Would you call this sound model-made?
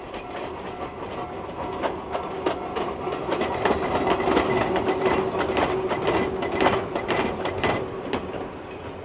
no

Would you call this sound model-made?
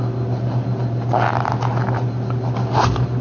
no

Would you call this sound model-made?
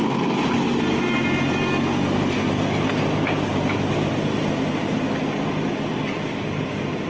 no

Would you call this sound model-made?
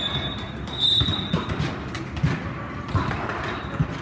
no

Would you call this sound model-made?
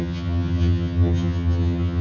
yes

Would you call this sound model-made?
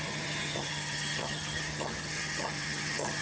yes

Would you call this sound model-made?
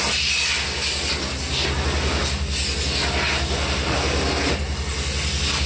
no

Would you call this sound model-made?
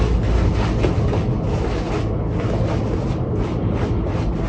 no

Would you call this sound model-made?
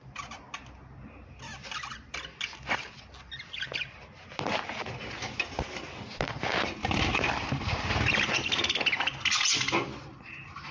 no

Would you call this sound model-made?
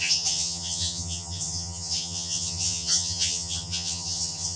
yes